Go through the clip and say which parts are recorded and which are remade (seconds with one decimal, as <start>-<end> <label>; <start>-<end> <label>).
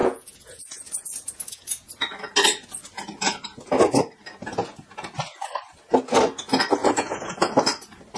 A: 0.0-1.9 remade; 1.9-6.8 recorded; 6.8-7.5 remade; 7.5-8.2 recorded